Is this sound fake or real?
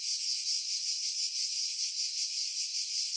real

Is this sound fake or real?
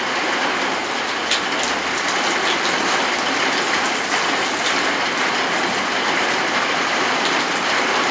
real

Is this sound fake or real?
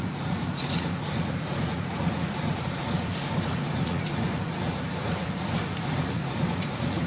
fake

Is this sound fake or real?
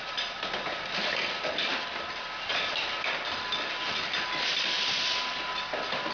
fake